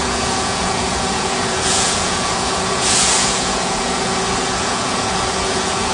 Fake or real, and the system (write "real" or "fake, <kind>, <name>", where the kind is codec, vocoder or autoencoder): fake, vocoder, Vocos